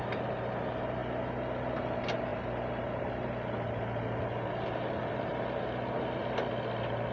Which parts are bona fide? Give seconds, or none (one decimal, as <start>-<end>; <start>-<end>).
0.0-7.1